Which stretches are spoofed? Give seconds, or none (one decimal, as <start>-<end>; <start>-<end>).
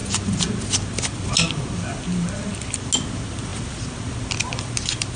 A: none